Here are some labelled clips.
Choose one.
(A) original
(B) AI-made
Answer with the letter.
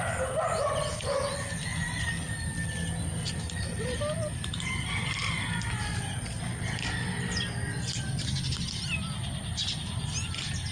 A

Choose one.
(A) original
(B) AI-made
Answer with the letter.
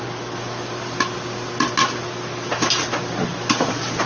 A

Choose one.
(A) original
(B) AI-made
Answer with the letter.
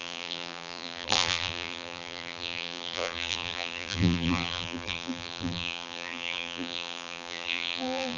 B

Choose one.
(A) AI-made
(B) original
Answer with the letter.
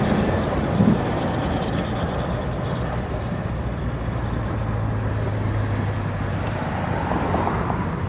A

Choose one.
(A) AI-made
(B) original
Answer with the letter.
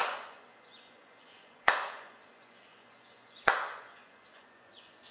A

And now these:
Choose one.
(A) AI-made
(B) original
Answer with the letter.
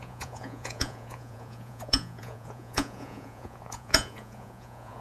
A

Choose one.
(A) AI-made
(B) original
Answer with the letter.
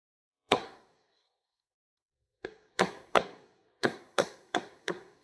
A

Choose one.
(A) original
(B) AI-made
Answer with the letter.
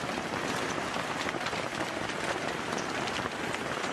A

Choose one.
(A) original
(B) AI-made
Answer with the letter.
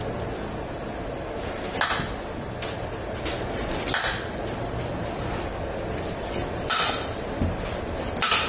A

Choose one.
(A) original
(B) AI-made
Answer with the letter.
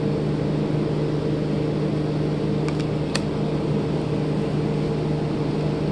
A